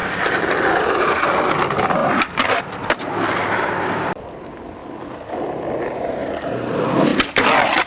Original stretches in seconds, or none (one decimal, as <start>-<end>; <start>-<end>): 1.2-7.9

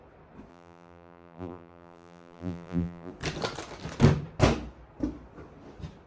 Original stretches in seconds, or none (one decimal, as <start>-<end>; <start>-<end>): 0.0-0.5; 3.1-6.1

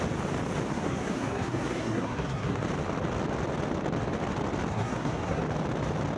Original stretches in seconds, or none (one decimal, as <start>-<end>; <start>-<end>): 0.0-0.7; 2.6-4.7; 5.4-6.2

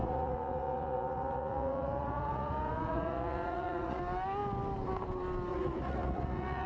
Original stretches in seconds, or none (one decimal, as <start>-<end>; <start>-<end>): 4.0-5.5